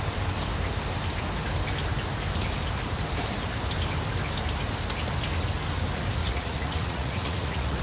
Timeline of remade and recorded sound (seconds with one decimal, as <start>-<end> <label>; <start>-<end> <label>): 0.0-6.2 recorded; 6.2-7.8 remade